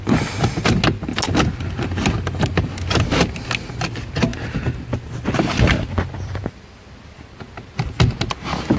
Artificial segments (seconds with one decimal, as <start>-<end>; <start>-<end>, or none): none